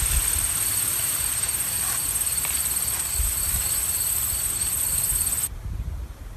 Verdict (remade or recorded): remade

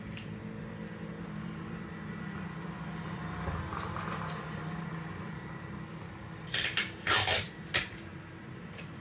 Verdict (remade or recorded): remade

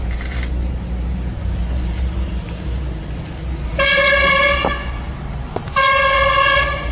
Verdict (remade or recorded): remade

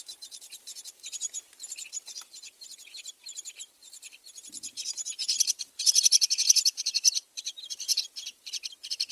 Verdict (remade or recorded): remade